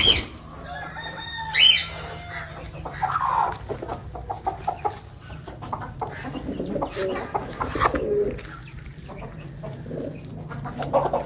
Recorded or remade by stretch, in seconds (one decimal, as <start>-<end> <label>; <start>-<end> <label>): 0.0-11.3 recorded